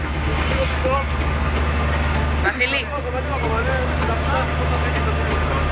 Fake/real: real